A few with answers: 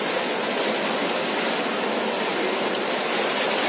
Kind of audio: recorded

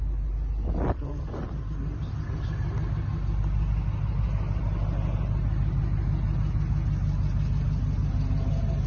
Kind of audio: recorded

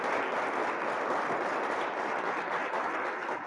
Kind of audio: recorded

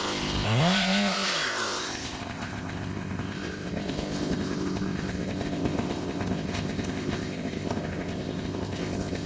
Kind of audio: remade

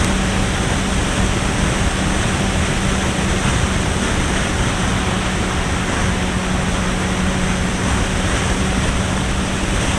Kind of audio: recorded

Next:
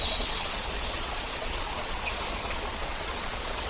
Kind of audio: remade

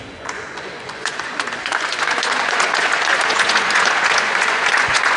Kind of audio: remade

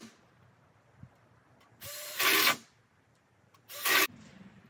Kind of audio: remade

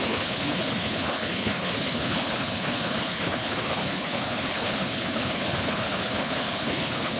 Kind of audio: remade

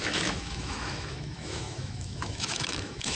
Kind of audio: remade